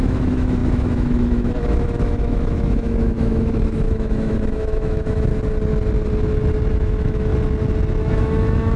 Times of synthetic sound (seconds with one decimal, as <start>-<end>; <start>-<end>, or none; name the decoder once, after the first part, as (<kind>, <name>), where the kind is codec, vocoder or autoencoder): 0.0-5.3 (autoencoder, DAC-VAE); 6.7-7.3; 8.0-8.8